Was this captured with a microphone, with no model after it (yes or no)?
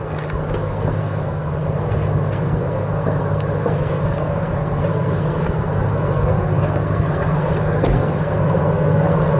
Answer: no